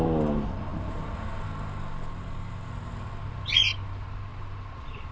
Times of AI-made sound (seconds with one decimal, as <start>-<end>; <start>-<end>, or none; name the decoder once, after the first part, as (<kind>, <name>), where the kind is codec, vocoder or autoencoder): none